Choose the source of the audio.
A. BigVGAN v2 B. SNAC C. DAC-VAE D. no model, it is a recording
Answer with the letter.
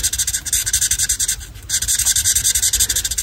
D